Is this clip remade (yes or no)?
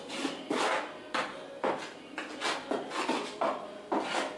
no